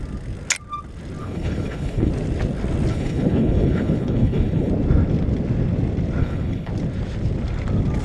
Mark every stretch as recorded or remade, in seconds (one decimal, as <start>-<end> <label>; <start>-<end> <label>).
0.0-1.2 recorded; 1.2-2.1 remade; 2.1-2.9 recorded; 2.9-4.7 remade; 4.7-6.2 recorded; 6.2-6.7 remade; 6.7-8.0 recorded